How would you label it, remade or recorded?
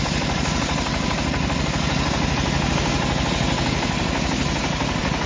recorded